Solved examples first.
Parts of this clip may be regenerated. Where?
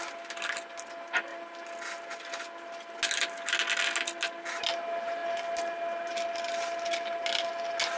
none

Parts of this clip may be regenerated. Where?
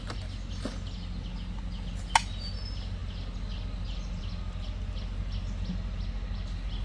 none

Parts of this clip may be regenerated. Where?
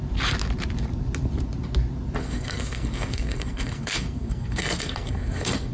2.2-5.7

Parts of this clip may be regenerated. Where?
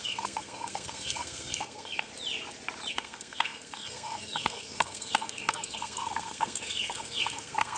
0.0-2.1; 2.9-7.8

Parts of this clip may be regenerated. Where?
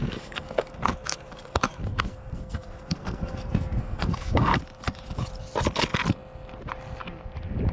0.0-4.6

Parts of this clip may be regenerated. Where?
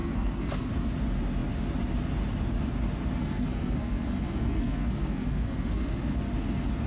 0.0-0.7; 3.2-6.2